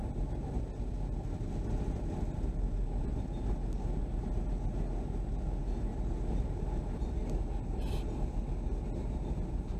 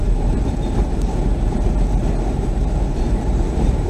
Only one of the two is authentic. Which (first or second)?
first